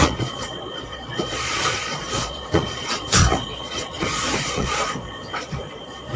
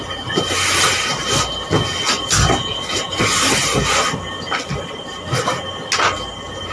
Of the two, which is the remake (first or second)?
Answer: first